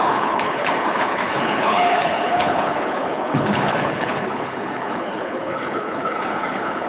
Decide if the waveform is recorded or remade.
remade